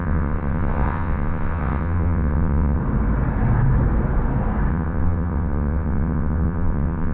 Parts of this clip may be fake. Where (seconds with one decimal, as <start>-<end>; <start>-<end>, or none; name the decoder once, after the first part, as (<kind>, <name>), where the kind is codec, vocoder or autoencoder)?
0.0-2.8 (vocoder, WaveNeXt); 4.7-7.1